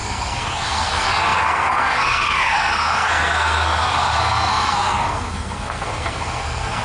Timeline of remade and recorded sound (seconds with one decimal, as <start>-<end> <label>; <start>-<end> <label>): 0.0-6.8 remade